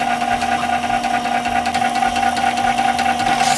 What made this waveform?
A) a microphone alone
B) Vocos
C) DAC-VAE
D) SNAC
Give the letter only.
A